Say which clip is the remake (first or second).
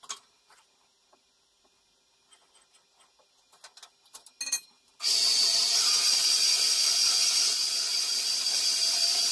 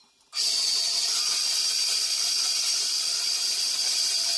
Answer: second